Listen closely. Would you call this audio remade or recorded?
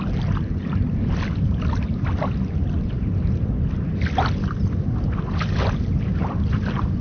recorded